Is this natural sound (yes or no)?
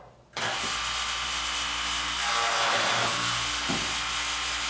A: yes